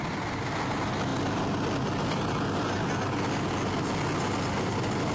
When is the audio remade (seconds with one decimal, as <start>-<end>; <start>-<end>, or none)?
none